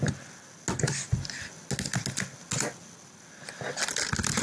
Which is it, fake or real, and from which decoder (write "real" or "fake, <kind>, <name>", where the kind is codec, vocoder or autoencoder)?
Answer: real